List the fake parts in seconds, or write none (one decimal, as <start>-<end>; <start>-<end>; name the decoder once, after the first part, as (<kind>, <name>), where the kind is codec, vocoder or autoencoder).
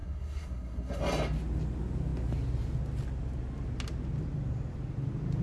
0.0-1.0 (codec, SNAC)